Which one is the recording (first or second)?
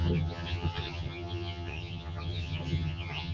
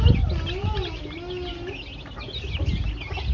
second